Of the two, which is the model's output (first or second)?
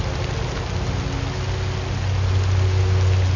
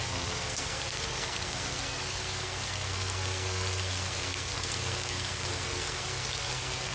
second